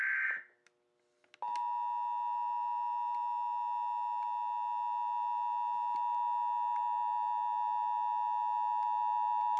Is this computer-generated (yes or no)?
no